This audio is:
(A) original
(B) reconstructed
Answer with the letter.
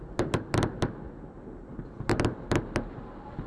A